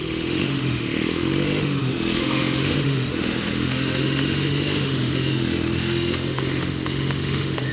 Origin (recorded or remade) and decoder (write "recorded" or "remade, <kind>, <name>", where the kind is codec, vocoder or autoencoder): remade, autoencoder, DAC-VAE